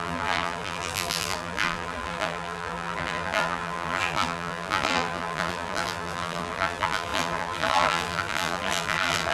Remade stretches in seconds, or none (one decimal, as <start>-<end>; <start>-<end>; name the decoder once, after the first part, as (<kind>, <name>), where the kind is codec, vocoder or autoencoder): 0.0-9.3 (vocoder, BigVGAN v2)